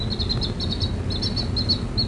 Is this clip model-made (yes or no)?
no